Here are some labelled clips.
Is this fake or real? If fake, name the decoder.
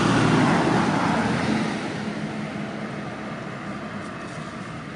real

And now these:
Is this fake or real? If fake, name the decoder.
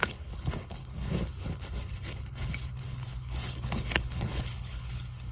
fake, codec, HILCodec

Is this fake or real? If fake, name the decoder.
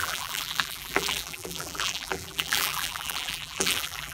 fake, vocoder, BigVGAN v2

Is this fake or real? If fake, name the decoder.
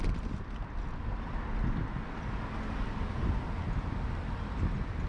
real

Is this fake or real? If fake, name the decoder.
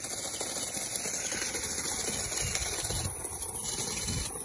real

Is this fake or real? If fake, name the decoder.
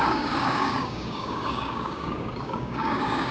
fake, codec, DAC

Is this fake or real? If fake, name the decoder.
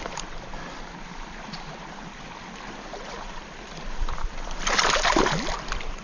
fake, vocoder, BigVGAN v2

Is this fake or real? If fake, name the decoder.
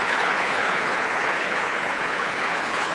fake, codec, HILCodec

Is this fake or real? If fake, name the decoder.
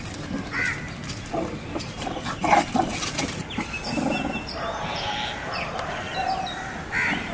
real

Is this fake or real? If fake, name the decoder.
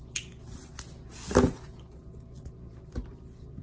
real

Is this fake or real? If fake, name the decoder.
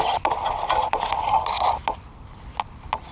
real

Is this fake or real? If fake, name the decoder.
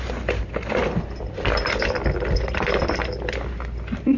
real